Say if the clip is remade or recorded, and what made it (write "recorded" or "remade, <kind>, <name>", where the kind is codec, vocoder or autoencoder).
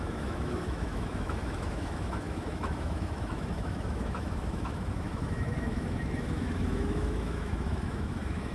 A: remade, autoencoder, DAC-VAE